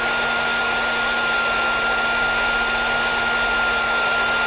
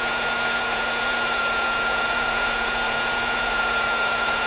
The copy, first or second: second